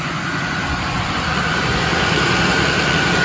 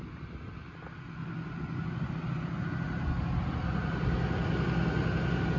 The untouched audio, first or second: second